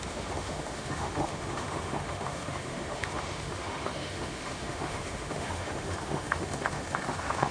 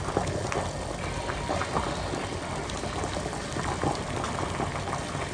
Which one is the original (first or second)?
second